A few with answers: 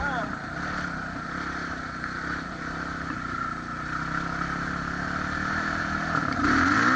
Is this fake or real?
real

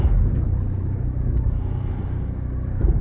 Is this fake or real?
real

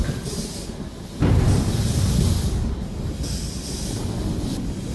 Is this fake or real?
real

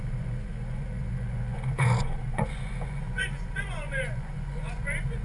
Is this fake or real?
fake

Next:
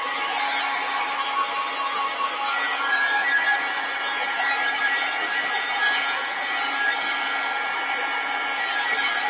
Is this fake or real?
real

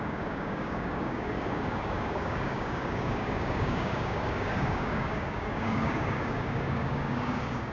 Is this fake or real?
fake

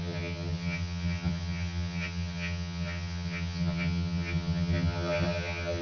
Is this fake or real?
fake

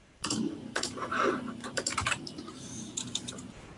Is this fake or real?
fake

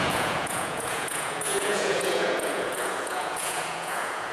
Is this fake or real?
fake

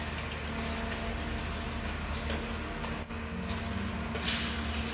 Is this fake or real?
real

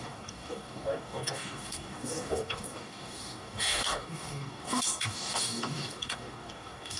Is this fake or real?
fake